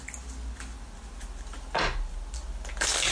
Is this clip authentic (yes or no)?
yes